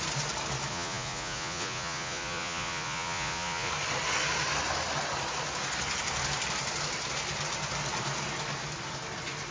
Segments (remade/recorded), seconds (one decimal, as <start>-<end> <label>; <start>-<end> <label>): 0.0-0.7 recorded; 0.7-3.7 remade; 3.7-9.5 recorded

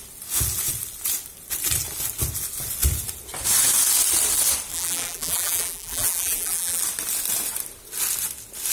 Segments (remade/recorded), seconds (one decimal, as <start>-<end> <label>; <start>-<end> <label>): 0.0-4.7 recorded; 4.7-6.8 remade; 6.8-8.7 recorded

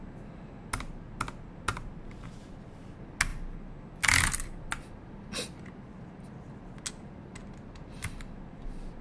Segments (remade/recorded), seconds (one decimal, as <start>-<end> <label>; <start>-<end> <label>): 0.0-1.7 recorded; 1.7-2.8 remade; 2.8-9.0 recorded